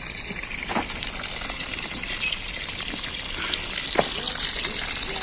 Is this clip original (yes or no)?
yes